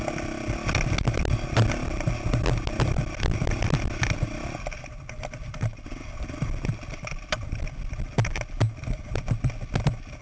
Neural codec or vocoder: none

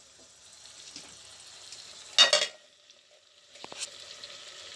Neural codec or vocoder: none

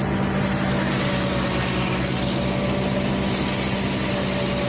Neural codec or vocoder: none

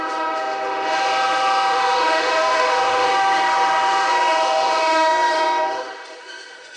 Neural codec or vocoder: autoencoder, DAC-VAE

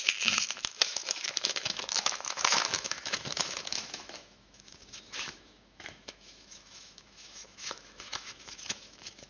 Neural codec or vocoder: autoencoder, DAC-VAE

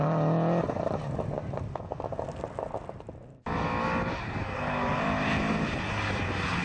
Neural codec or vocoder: none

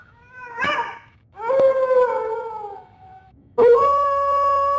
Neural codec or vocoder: autoencoder, DAC-VAE